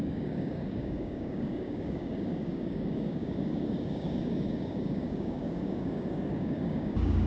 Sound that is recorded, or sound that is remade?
remade